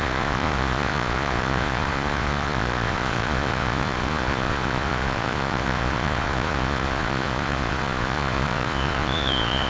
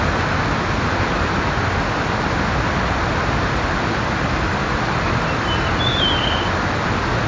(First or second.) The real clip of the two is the second